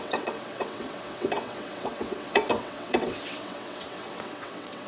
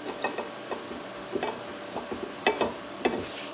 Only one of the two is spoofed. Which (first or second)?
first